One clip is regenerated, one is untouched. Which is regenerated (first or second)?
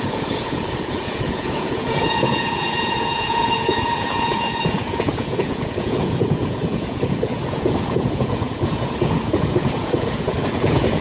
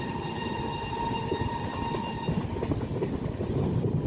first